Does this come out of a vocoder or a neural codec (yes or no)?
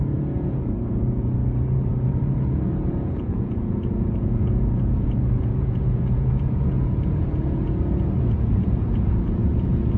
yes